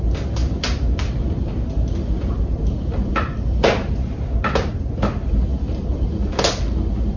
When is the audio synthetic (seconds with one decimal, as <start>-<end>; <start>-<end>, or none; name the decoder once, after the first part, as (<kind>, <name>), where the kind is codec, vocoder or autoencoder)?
0.4-2.4 (vocoder, BigVGAN v2); 3.1-4.7; 5.5-6.4